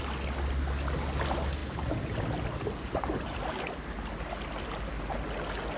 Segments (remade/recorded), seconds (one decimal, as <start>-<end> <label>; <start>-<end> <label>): 0.0-5.8 recorded